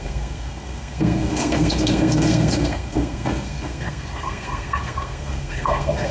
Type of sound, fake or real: fake